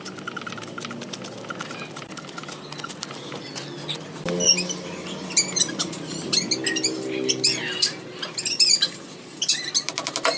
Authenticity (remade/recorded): recorded